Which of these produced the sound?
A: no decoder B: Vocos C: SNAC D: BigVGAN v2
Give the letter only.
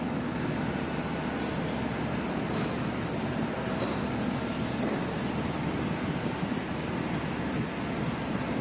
A